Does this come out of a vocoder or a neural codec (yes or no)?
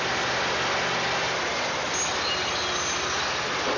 no